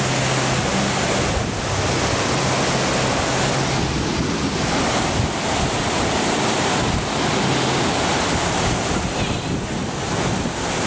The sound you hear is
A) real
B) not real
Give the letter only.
A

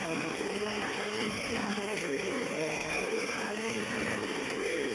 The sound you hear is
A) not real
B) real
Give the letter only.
A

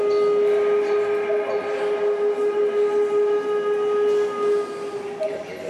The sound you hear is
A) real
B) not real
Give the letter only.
A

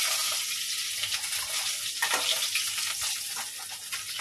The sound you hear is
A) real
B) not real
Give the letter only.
A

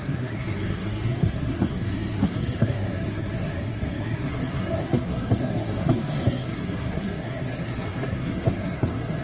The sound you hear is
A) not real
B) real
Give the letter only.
A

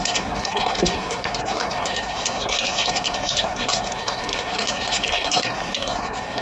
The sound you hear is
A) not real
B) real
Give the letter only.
A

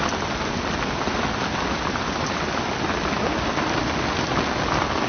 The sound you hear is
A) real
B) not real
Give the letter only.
A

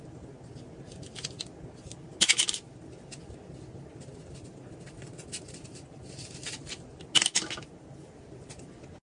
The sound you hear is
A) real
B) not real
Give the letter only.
A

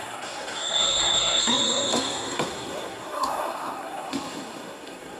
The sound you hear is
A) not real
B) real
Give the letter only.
A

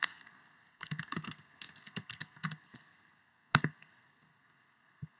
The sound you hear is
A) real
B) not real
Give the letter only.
B